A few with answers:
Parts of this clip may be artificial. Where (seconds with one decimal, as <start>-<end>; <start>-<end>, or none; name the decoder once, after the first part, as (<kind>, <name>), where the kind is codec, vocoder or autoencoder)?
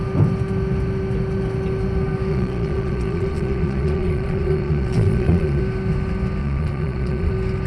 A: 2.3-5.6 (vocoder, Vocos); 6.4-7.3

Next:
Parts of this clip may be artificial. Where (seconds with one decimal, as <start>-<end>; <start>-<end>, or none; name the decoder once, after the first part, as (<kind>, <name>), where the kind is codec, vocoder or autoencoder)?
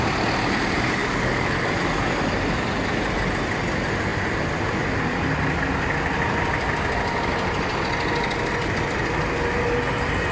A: 1.0-1.7 (codec, DAC)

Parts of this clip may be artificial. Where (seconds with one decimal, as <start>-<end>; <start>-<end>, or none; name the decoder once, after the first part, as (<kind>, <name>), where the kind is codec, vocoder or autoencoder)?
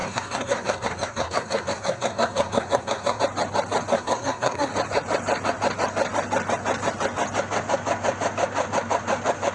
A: 0.0-3.2 (codec, SNAC); 3.9-4.7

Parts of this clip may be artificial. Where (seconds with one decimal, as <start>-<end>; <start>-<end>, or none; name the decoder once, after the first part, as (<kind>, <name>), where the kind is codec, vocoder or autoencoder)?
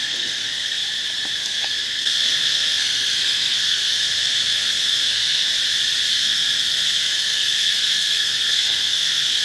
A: 0.0-0.8 (codec, SNAC); 1.4-5.5; 6.1-9.4